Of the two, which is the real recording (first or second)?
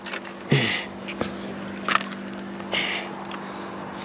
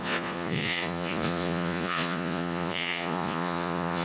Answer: first